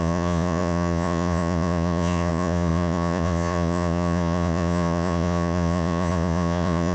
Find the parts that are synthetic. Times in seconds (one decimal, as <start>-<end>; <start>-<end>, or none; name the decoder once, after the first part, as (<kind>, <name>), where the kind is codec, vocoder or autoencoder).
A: 0.0-6.9 (vocoder, Vocos)